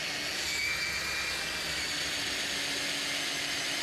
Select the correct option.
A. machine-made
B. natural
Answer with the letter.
B